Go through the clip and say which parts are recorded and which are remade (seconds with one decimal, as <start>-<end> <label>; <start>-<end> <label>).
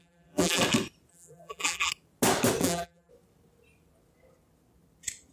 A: 0.0-0.6 remade; 0.6-1.1 recorded; 1.1-1.9 remade; 1.9-2.6 recorded; 2.6-3.1 remade; 3.1-5.3 recorded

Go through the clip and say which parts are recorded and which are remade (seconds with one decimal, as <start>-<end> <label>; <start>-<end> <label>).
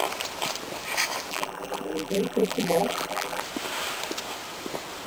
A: 0.0-1.3 recorded; 1.3-3.4 remade; 3.4-5.1 recorded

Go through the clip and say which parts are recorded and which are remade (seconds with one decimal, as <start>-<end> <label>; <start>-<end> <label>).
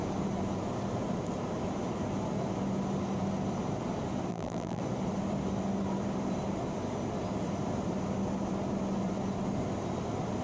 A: 0.0-4.3 recorded; 4.3-4.8 remade; 4.8-10.4 recorded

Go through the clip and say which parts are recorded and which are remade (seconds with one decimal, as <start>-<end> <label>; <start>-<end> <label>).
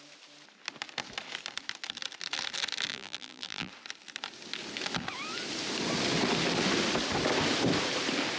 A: 0.0-2.9 recorded; 2.9-3.7 remade; 3.7-8.4 recorded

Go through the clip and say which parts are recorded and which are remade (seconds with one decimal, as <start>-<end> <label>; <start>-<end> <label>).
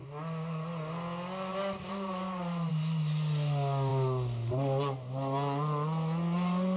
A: 0.0-1.5 recorded; 1.5-2.7 remade; 2.7-6.8 recorded